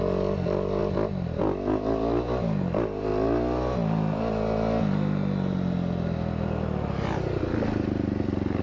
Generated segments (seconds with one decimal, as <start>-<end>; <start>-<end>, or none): none